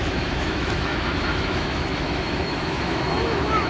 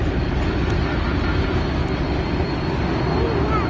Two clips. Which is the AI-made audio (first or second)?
first